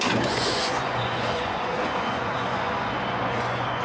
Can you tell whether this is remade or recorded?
remade